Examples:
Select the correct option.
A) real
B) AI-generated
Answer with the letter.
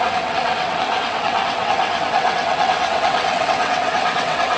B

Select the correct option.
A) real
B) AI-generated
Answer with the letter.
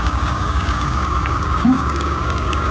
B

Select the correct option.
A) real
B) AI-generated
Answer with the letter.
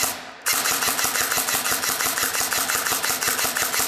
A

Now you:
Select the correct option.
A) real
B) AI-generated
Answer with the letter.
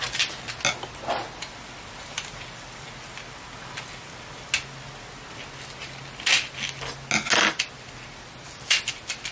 A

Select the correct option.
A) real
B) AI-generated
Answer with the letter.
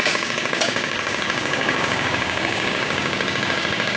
B